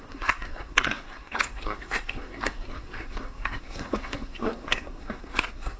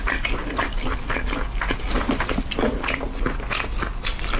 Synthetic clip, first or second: first